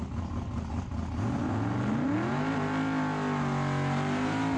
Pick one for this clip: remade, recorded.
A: recorded